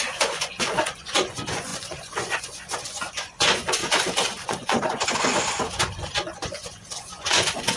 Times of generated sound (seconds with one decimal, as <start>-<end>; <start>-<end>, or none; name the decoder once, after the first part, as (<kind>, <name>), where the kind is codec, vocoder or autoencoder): 0.0-7.8 (vocoder, Vocos)